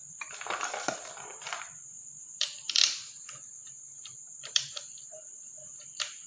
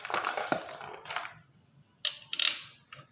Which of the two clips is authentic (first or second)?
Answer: second